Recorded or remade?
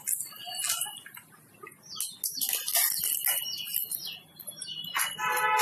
recorded